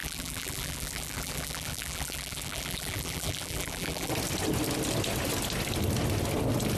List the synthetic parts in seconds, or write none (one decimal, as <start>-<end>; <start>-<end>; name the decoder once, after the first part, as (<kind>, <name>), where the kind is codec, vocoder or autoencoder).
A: 0.0-4.1 (vocoder, BigVGAN v2)